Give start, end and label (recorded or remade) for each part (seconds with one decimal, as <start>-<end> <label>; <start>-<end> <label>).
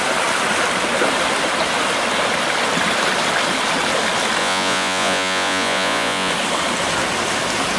0.0-4.4 recorded; 4.4-6.3 remade; 6.3-7.8 recorded